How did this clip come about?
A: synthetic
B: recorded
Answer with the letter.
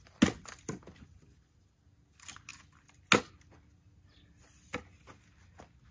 B